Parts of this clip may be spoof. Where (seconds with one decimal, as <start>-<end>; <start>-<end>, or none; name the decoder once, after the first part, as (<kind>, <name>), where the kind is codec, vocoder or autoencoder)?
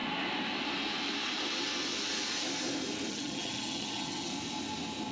3.1-4.3 (vocoder, HiFi-GAN)